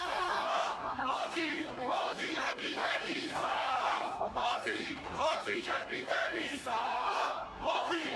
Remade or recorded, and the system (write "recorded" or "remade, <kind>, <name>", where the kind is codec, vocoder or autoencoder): remade, codec, SNAC